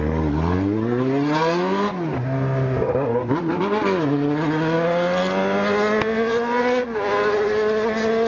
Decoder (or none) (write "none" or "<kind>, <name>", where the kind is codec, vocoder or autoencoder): none